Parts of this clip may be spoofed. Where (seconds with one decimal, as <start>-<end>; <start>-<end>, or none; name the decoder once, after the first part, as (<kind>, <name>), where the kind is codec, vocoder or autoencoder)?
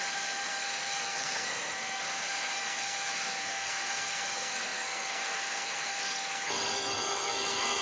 0.0-7.8 (codec, SNAC)